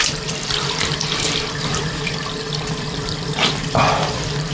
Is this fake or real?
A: fake